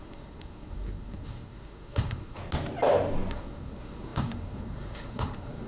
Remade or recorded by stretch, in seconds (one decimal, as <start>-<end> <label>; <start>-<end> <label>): 0.0-2.4 remade; 2.4-3.3 recorded; 3.3-5.7 remade